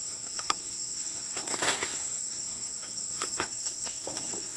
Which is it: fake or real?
fake